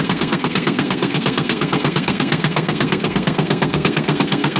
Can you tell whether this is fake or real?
fake